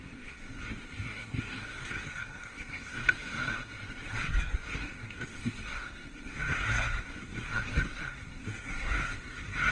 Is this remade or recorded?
remade